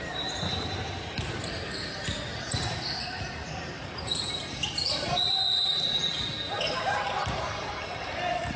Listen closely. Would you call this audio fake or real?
fake